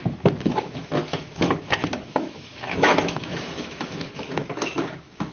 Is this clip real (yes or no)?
no